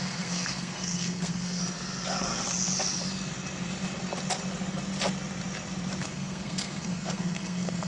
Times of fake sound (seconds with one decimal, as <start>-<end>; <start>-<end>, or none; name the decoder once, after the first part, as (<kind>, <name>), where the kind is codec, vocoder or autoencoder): 0.0-1.6 (codec, SNAC); 6.0-7.9